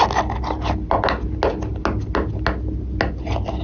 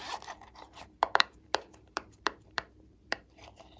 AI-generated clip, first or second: second